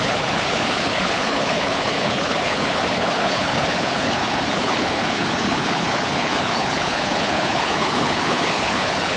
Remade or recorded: remade